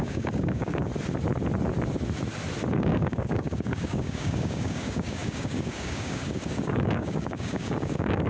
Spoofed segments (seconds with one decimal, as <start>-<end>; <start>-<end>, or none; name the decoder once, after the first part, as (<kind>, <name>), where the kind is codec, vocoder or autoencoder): 0.0-0.9 (codec, DAC); 2.7-8.3